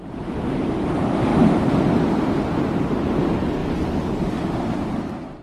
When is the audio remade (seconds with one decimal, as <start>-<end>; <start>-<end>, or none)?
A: none